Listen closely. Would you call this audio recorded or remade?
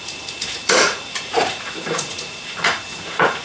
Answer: remade